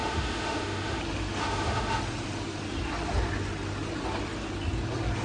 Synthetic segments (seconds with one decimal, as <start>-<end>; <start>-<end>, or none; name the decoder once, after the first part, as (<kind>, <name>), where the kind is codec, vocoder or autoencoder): 0.0-1.0 (autoencoder, DAC-VAE); 1.4-2.0